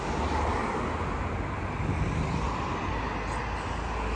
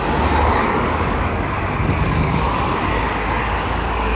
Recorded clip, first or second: first